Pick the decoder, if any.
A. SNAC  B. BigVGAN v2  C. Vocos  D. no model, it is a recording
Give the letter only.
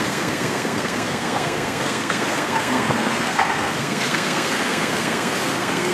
A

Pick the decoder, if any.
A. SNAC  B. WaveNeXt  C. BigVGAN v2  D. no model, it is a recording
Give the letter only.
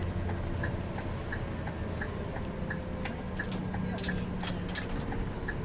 D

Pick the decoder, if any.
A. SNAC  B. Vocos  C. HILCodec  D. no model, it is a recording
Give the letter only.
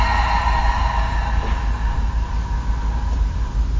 D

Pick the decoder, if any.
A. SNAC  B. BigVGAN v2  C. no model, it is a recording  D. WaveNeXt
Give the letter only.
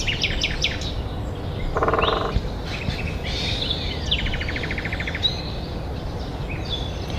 C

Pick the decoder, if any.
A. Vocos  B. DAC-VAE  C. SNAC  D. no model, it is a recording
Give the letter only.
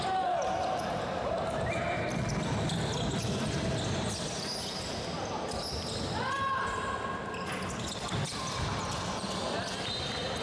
D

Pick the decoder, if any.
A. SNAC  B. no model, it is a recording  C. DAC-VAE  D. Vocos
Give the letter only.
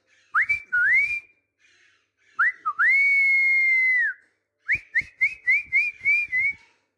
B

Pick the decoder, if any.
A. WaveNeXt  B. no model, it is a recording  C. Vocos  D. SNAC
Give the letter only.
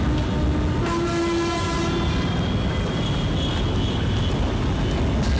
B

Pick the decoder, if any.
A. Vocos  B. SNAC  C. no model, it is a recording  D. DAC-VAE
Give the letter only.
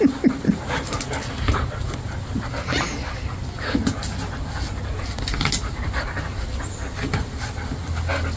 C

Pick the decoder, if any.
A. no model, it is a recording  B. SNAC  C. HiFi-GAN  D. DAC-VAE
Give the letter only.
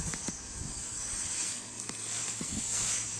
B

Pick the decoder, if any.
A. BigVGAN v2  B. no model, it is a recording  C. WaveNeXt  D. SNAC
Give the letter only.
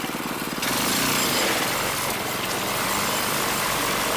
B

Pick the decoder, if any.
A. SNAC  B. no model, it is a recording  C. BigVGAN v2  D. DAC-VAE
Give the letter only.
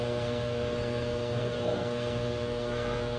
A